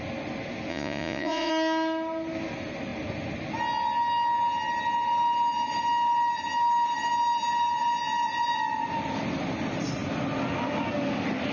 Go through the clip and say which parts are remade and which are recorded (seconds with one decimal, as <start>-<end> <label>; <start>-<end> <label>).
0.0-0.7 recorded; 0.7-1.5 remade; 1.5-11.5 recorded